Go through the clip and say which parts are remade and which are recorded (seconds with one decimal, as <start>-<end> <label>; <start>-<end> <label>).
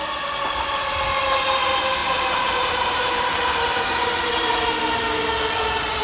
0.0-2.0 recorded; 2.0-4.8 remade; 4.8-6.0 recorded